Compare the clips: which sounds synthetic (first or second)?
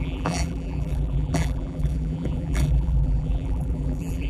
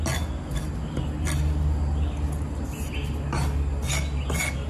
first